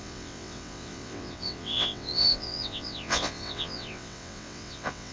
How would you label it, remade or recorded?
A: remade